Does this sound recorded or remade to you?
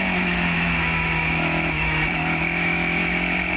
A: remade